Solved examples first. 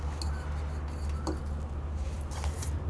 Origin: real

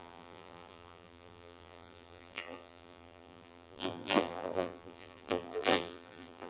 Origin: fake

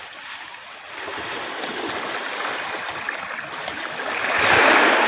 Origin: real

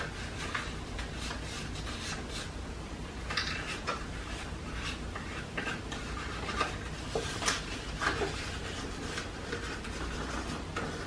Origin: real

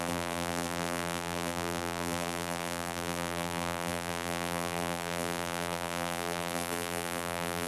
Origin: fake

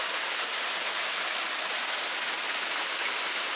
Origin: real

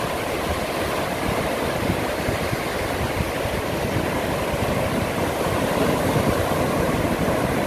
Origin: real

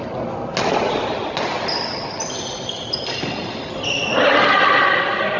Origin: real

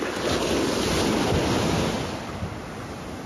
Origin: real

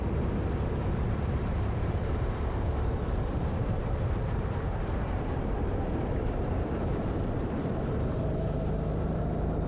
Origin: fake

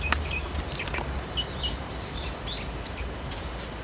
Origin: real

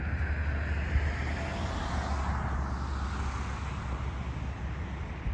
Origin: real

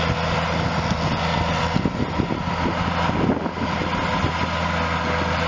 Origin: real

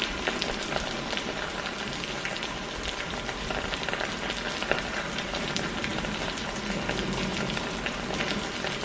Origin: real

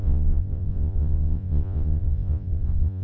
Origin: fake